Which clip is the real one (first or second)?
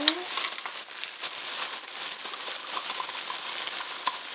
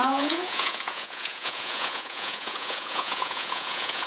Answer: first